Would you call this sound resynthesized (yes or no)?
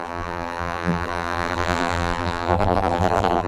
yes